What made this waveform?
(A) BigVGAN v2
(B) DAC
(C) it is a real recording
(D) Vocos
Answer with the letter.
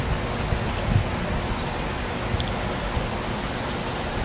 C